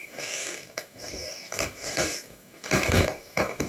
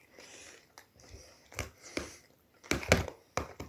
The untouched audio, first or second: second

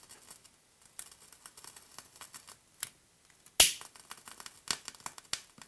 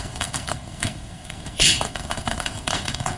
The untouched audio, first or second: first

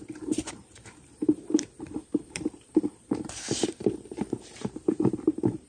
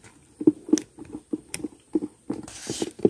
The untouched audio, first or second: second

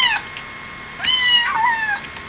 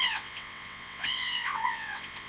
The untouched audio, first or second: first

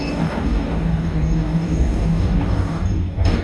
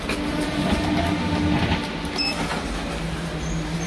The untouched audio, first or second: second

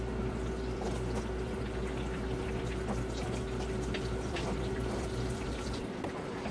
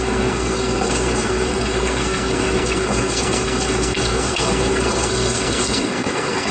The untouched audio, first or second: first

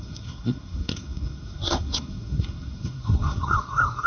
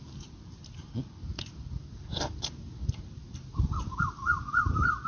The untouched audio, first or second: second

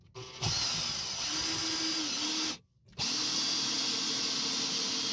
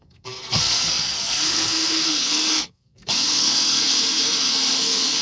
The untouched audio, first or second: first